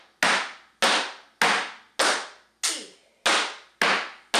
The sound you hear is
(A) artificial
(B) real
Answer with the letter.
B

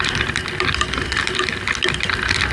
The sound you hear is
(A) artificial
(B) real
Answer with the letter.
B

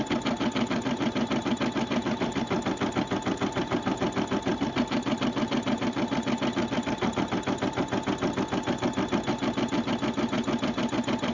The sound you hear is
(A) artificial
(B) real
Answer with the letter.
B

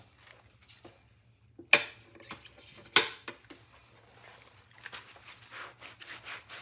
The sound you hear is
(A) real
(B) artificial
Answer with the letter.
A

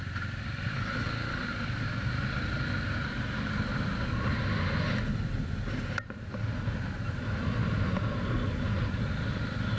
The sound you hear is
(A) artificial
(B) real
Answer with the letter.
B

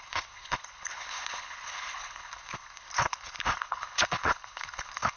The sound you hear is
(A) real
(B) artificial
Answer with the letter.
B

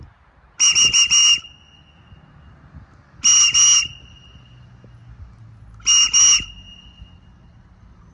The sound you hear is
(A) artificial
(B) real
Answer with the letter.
B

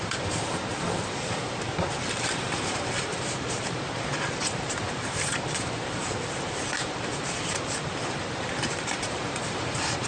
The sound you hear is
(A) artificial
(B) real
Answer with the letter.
A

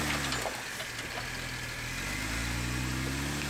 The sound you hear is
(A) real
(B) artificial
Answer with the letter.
A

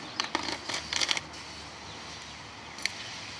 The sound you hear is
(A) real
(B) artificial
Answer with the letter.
A